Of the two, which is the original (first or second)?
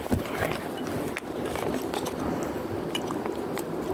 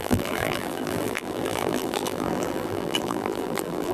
first